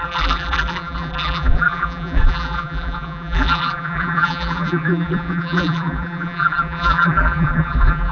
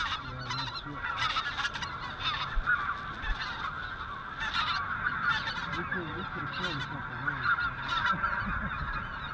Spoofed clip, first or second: first